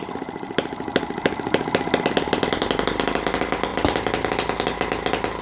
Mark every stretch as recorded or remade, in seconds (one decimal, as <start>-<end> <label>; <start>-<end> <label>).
0.0-5.4 recorded